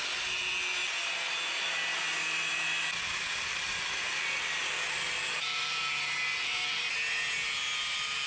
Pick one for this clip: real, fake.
real